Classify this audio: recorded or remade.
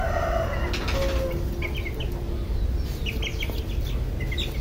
recorded